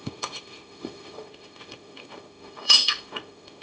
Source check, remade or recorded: remade